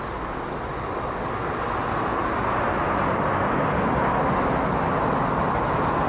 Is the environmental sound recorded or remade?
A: recorded